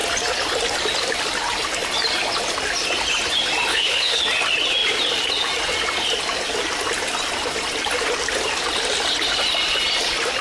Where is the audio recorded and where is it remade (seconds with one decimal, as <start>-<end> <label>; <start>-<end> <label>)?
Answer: 0.0-3.7 recorded; 3.7-4.2 remade; 4.2-10.4 recorded